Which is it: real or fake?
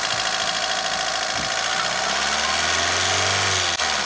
real